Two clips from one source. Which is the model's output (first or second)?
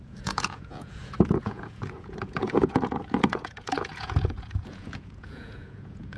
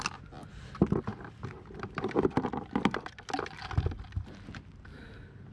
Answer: first